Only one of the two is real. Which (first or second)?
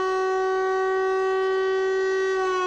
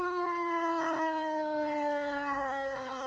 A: first